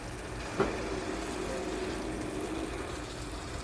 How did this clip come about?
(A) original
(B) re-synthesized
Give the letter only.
A